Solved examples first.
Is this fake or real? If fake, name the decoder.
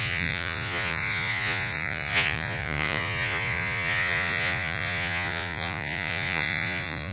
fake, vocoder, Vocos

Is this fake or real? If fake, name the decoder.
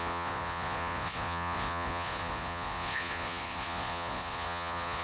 fake, vocoder, Vocos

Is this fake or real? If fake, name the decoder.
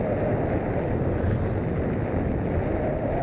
real